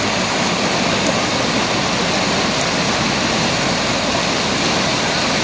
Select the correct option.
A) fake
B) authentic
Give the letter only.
B